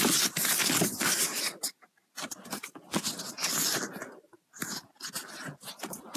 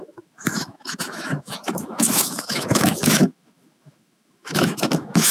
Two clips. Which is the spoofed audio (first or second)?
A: second